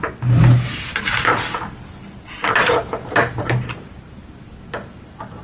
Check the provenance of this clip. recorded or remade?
recorded